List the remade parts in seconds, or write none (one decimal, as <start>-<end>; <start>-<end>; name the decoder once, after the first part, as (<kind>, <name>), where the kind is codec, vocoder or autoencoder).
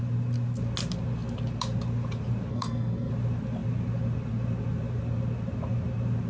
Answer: 2.5-3.1 (codec, SNAC)